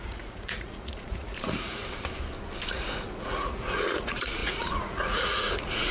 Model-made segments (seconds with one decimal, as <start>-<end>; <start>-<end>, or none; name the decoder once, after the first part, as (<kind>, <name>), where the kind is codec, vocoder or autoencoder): 0.0-1.8 (vocoder, Vocos); 2.7-5.9